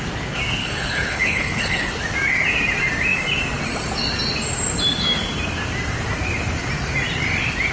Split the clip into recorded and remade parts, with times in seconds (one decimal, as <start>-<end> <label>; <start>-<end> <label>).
0.0-0.6 recorded; 0.6-1.9 remade; 1.9-7.7 recorded